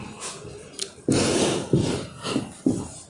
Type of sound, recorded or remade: recorded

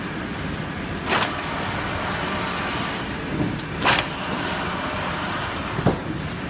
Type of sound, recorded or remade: recorded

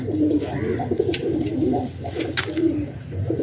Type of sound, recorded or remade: remade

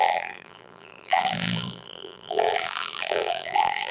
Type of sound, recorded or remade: remade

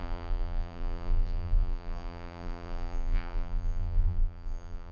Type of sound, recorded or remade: remade